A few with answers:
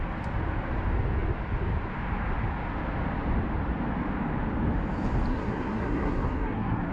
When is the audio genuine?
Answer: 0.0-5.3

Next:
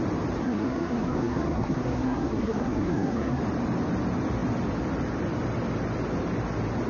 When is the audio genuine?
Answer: 0.0-0.4; 3.4-6.9

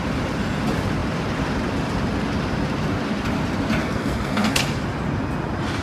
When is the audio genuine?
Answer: 0.0-3.8; 4.6-5.8

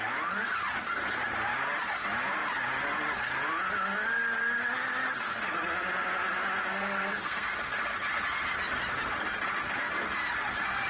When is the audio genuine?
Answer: 0.0-6.7; 7.5-10.9